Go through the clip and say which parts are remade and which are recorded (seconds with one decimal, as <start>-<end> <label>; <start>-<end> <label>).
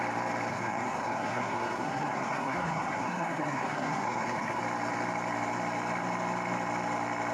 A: 0.0-0.5 recorded; 0.5-4.6 remade; 4.6-7.3 recorded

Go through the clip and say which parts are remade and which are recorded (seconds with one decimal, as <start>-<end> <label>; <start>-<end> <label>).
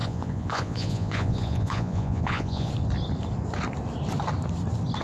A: 0.0-2.7 remade; 2.7-5.0 recorded